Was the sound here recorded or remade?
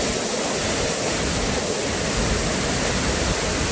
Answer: recorded